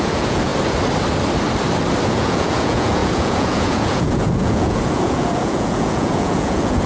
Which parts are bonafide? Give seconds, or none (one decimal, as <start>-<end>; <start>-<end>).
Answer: 0.5-2.1

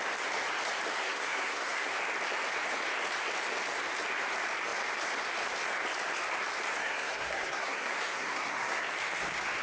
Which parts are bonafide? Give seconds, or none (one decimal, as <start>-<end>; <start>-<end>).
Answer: 0.0-1.0; 1.9-6.8; 8.8-9.6

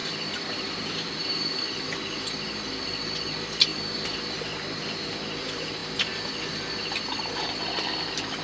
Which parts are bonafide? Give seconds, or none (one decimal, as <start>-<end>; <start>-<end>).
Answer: 1.6-3.7; 4.8-8.4

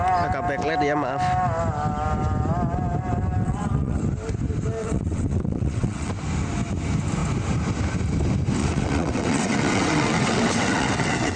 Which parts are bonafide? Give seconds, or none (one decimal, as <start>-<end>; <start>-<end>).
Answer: 0.0-3.4; 4.0-4.8; 6.1-8.6

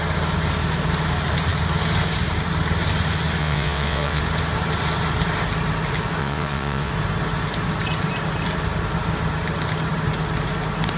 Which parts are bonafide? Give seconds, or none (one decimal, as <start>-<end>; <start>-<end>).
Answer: 0.0-3.4; 4.2-6.2; 6.9-11.0

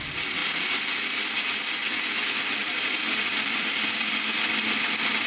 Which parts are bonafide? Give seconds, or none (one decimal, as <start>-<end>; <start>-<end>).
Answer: 0.0-0.4; 0.9-2.6; 4.1-5.3